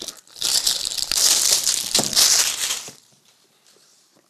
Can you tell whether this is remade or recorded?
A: remade